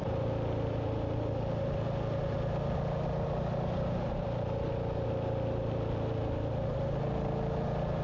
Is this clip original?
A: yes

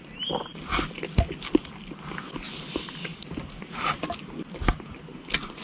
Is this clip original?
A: yes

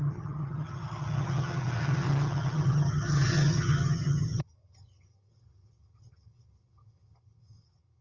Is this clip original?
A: no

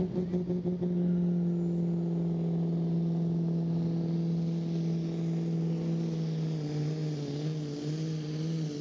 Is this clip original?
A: yes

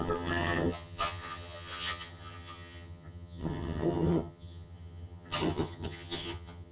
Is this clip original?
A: no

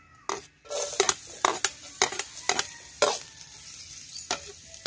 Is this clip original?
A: yes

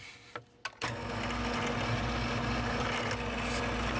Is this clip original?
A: yes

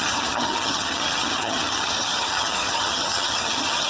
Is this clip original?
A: no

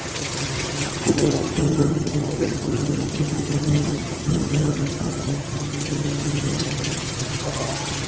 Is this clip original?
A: no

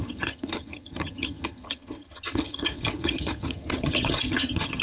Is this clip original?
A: no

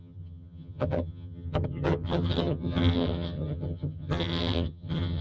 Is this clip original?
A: no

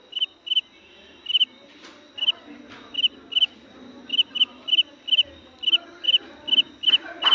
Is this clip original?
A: yes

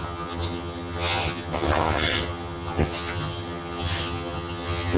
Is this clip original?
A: no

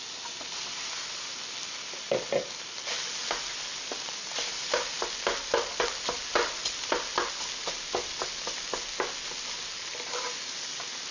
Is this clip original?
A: yes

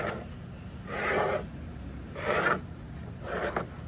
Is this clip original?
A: yes